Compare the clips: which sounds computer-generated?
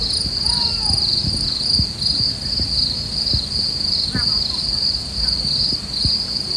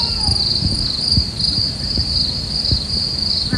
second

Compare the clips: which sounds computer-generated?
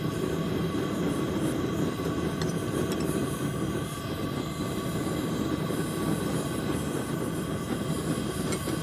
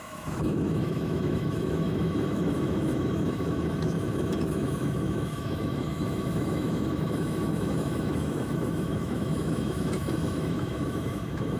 second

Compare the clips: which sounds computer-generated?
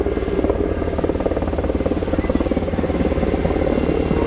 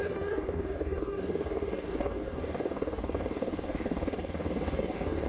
second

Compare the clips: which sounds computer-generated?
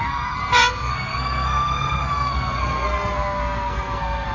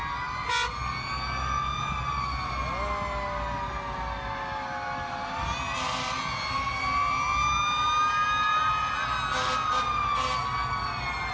first